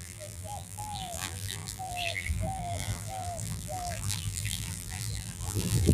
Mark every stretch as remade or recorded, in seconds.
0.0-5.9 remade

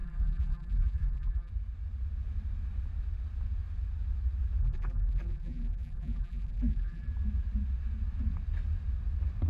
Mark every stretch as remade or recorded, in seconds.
0.0-1.5 remade; 1.5-4.6 recorded; 4.6-7.1 remade; 7.1-9.5 recorded